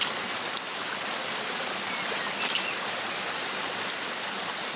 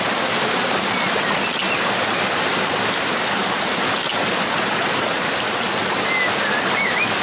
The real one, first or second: second